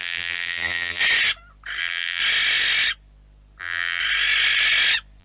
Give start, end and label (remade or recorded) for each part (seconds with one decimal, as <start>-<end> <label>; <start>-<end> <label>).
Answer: 0.0-1.0 remade; 1.0-1.8 recorded; 1.8-2.2 remade; 2.2-3.6 recorded; 3.6-4.0 remade; 4.0-5.2 recorded